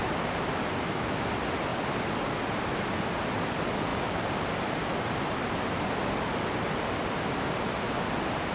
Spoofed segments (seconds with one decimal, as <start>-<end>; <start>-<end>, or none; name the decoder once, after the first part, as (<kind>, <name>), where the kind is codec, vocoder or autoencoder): 0.0-0.6 (vocoder, BigVGAN v2); 3.9-4.5